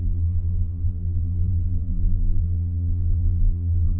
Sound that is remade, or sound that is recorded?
remade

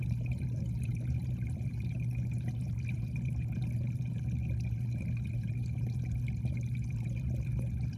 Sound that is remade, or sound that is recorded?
remade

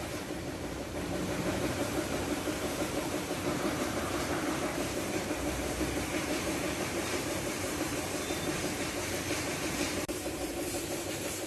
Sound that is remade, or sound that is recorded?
remade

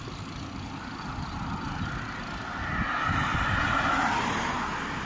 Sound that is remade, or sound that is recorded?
recorded